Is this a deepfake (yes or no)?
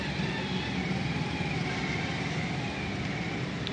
no